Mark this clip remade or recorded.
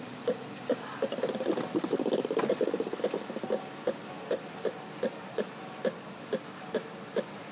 remade